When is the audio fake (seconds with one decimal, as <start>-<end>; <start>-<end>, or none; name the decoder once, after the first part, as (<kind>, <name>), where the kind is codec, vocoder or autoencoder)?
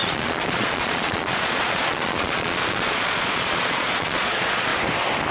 0.0-4.7 (vocoder, Vocos)